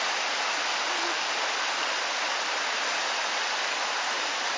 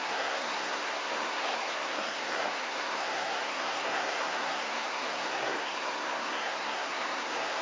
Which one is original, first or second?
first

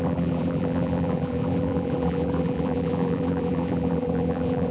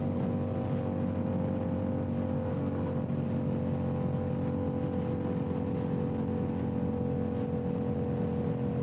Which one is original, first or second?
second